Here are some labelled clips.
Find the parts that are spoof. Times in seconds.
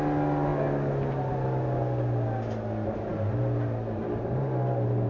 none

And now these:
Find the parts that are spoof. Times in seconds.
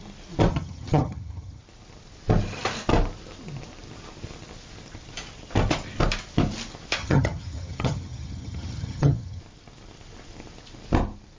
0.5-1.6 (vocoder, HiFi-GAN); 7.0-9.4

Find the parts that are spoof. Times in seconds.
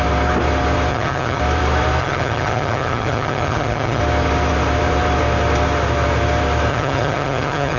0.9-1.4 (vocoder, HiFi-GAN); 2.0-4.0; 6.7-7.8